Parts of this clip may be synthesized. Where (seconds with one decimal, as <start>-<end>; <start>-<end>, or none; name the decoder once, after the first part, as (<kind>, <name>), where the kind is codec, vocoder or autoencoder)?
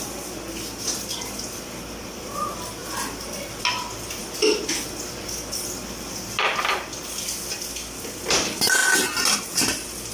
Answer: none